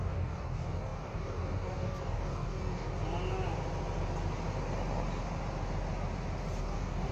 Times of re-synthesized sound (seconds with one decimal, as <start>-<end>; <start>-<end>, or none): 0.0-2.9; 6.6-7.1

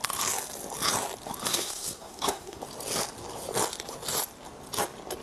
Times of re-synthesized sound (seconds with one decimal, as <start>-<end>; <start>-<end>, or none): 1.5-2.6

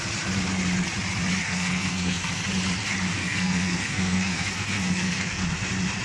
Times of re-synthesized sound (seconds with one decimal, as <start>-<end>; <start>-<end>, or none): 1.4-2.4; 3.2-5.4